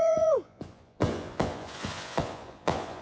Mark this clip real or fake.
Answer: fake